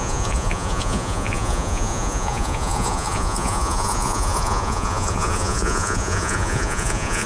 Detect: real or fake fake